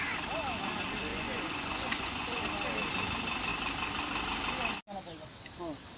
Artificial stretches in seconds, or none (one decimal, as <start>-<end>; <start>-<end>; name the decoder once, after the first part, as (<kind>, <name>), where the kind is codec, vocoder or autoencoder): 1.1-2.4 (vocoder, Vocos)